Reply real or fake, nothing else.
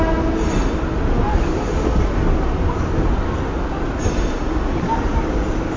real